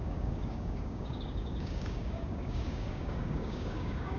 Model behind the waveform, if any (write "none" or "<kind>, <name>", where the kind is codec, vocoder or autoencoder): codec, DAC